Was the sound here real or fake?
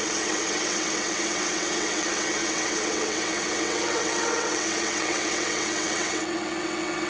fake